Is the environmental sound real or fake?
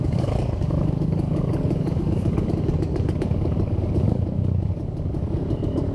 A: fake